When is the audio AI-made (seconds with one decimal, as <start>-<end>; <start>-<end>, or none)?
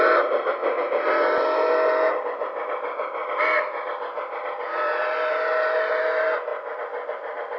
none